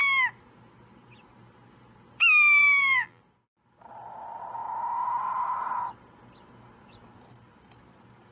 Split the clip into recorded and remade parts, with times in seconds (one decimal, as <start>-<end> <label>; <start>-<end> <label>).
0.0-2.6 recorded; 2.6-3.2 remade; 3.2-8.3 recorded